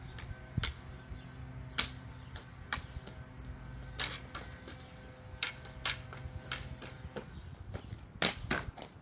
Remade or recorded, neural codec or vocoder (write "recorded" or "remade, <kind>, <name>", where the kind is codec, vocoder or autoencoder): recorded